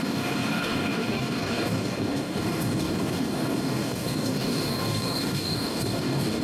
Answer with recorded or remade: remade